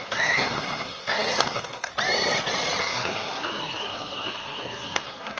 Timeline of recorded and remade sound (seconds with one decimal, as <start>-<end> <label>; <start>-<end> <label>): 0.0-1.9 remade; 1.9-2.8 recorded; 2.8-5.4 remade